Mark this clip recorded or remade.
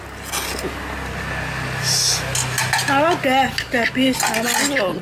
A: recorded